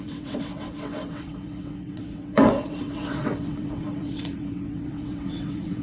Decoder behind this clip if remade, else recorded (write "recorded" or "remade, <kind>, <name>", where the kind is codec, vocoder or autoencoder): remade, vocoder, WaveNeXt